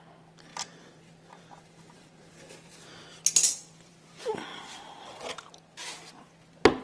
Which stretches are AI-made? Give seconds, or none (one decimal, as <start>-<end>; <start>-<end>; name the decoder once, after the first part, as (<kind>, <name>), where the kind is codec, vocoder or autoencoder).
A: 0.5-2.7 (vocoder, BigVGAN v2); 3.5-4.1; 4.5-5.5